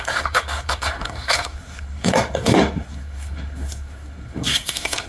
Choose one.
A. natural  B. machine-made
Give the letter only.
B